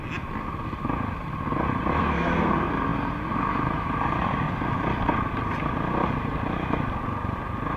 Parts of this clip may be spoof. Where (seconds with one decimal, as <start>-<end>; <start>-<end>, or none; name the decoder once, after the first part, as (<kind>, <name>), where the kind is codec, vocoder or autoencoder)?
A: 2.0-2.5 (codec, SNAC)